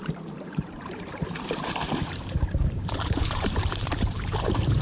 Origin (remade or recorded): remade